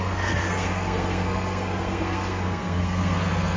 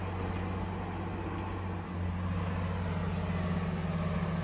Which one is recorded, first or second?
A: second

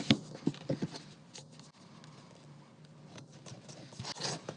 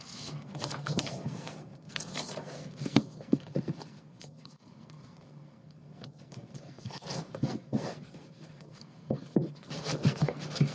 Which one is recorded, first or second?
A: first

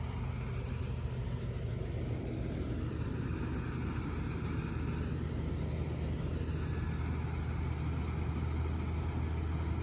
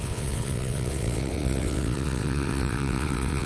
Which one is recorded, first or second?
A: first